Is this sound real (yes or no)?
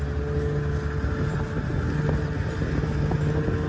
yes